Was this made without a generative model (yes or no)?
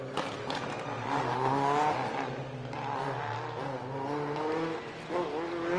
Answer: yes